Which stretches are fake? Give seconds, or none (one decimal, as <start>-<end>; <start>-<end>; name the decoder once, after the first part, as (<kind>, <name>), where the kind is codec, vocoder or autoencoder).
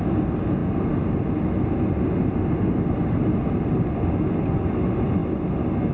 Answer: 0.6-4.1 (vocoder, BigVGAN v2)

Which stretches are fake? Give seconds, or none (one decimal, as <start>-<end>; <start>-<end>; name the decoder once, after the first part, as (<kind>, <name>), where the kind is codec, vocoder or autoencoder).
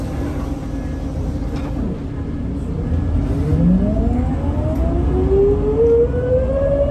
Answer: none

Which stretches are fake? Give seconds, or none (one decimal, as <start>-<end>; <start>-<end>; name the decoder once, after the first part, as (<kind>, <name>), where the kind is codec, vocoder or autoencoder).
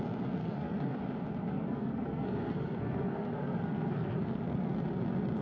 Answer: 0.4-1.0 (codec, SNAC); 1.5-4.7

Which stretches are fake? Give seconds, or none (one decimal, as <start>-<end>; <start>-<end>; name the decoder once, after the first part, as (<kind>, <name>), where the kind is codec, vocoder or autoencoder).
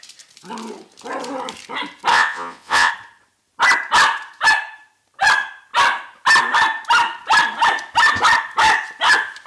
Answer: 2.1-2.9 (vocoder, WaveNeXt)